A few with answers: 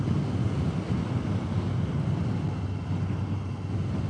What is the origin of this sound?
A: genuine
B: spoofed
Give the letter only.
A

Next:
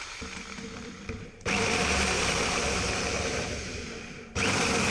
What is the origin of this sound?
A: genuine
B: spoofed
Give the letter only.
B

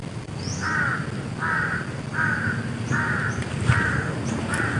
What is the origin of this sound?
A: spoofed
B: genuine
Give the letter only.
B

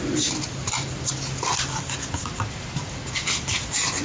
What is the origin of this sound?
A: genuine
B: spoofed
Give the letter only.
A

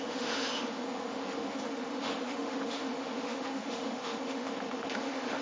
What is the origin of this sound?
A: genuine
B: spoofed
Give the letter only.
B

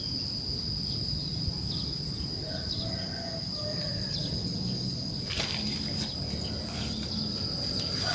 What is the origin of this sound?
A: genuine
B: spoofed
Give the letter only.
A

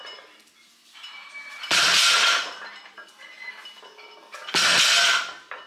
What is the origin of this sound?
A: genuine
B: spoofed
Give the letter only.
A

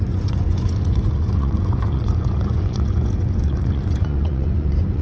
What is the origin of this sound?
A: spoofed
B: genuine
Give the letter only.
A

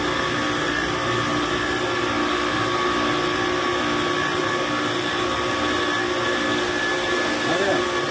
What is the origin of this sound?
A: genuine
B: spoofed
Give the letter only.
A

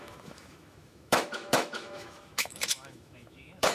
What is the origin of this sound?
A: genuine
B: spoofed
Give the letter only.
B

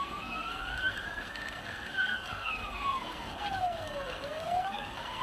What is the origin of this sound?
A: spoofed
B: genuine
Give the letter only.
A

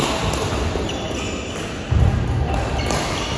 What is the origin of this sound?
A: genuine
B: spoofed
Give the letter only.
A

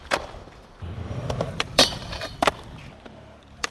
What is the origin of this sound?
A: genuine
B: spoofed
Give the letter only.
B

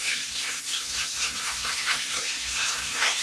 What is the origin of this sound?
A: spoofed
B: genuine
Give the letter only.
A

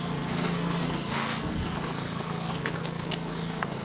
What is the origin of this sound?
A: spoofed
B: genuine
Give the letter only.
A